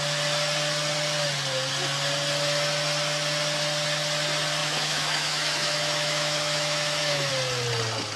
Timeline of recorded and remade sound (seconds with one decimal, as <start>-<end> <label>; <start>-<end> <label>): 0.0-4.6 recorded; 4.6-7.3 remade; 7.3-8.2 recorded